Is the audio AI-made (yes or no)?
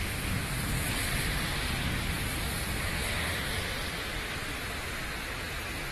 no